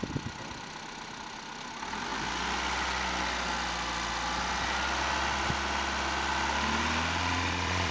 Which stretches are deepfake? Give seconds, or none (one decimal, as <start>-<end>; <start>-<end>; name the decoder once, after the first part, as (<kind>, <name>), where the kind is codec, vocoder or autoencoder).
7.2-7.9 (vocoder, Vocos)